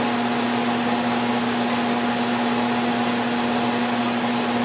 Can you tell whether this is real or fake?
real